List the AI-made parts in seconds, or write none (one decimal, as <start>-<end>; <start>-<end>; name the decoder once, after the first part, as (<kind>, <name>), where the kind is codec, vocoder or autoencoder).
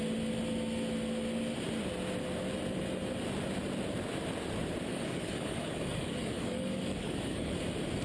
4.9-7.5 (codec, DAC)